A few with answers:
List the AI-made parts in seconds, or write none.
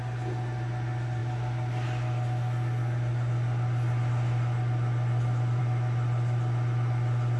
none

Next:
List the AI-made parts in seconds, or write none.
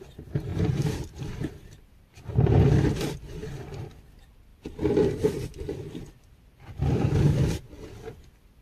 0.5-3.0 (vocoder, BigVGAN v2); 3.4-4.1; 4.5-6.1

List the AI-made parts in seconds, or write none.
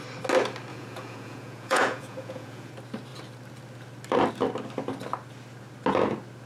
0.7-2.7 (vocoder, Vocos)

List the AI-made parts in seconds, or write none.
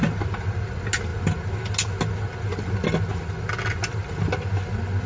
none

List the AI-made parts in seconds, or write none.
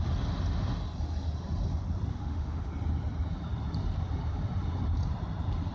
2.1-2.7 (autoencoder, DAC-VAE)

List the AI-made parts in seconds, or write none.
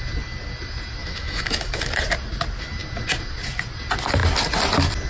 1.0-1.9 (autoencoder, DAC-VAE)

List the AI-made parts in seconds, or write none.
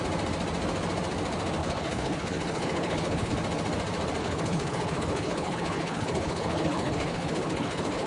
1.6-3.3 (codec, HILCodec); 4.2-8.1